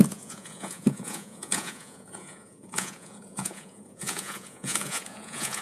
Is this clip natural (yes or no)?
no